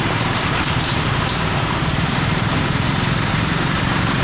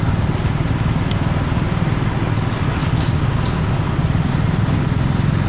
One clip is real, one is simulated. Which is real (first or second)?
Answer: second